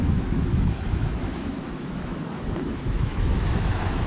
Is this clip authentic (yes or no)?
no